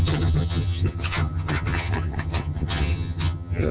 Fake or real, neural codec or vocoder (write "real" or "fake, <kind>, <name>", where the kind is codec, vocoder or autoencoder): fake, vocoder, HiFi-GAN